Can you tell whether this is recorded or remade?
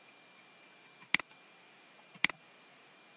recorded